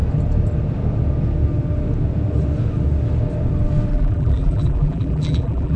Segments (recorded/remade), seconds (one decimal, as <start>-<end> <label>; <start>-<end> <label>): 0.0-3.9 recorded; 3.9-5.8 remade